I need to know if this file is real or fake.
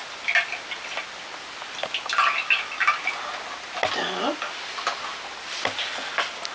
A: real